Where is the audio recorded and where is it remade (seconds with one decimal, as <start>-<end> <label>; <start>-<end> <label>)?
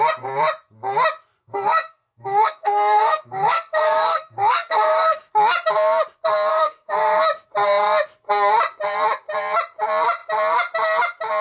0.0-1.4 recorded; 1.4-5.3 remade; 5.3-6.5 recorded; 6.5-7.2 remade; 7.2-11.4 recorded